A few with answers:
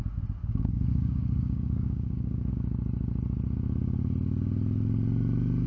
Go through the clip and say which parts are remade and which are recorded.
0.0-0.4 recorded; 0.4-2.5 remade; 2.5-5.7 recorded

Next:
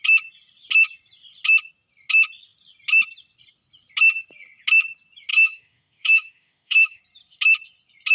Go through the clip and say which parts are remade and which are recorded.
0.0-5.3 recorded; 5.3-7.0 remade; 7.0-8.1 recorded

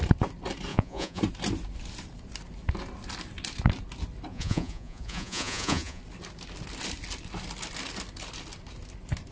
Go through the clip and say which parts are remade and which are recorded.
0.0-0.7 recorded; 0.7-1.2 remade; 1.2-4.3 recorded; 4.3-6.0 remade; 6.0-9.3 recorded

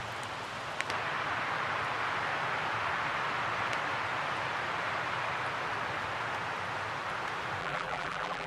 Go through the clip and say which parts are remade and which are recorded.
0.0-7.6 recorded; 7.6-8.5 remade

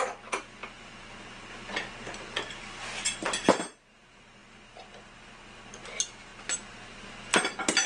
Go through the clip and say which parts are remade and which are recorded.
0.0-7.9 recorded

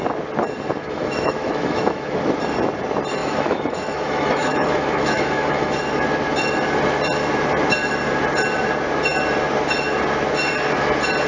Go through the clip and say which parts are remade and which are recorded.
0.0-0.8 recorded; 0.8-2.2 remade; 2.2-3.2 recorded; 3.2-5.8 remade; 5.8-11.3 recorded

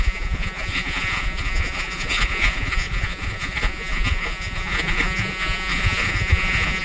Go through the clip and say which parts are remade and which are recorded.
0.0-6.8 remade

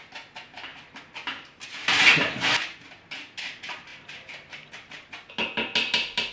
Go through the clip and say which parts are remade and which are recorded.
0.0-6.3 recorded